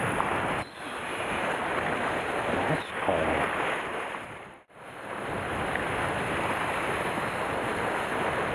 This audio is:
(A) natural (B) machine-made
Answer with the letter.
A